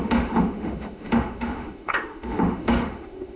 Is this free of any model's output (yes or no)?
no